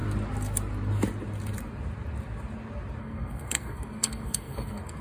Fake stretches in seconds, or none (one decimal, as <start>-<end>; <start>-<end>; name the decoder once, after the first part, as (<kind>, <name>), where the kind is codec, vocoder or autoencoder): 3.0-5.0 (codec, SNAC)